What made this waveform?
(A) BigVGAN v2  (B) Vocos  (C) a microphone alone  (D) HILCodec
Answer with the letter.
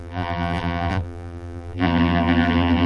A